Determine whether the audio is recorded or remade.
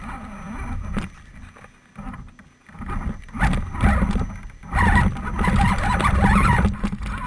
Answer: recorded